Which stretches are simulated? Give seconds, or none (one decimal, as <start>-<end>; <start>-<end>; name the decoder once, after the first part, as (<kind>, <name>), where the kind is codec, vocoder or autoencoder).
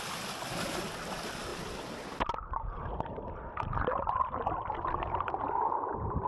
none